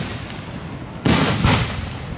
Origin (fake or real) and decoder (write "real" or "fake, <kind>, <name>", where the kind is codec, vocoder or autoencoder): real